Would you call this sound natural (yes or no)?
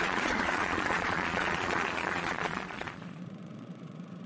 no